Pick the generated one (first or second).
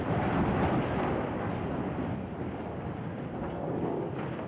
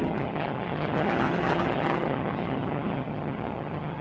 second